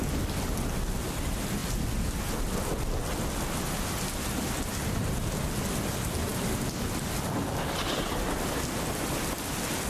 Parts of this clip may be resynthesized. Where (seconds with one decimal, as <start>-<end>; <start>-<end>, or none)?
none